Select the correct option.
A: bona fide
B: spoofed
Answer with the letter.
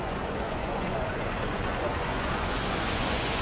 B